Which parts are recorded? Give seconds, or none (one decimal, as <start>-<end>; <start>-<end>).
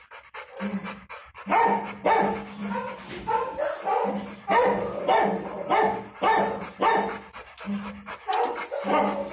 0.0-9.3